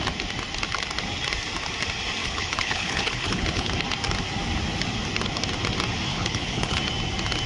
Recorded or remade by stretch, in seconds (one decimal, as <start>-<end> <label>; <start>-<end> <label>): 0.0-2.2 recorded; 2.2-3.7 remade; 3.7-6.1 recorded; 6.1-6.8 remade; 6.8-7.5 recorded